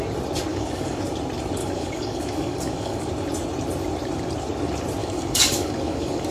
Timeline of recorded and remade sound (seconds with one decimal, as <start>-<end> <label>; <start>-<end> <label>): 0.0-0.5 recorded; 0.5-1.0 remade; 1.0-1.6 recorded; 1.6-3.1 remade; 3.1-5.0 recorded; 5.0-6.3 remade